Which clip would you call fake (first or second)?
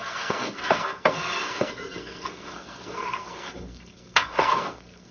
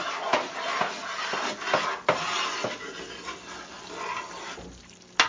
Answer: first